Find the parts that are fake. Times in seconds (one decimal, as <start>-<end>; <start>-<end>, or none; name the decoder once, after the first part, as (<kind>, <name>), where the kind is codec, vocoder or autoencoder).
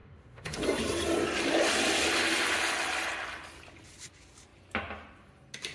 0.0-0.6 (autoencoder, DAC-VAE)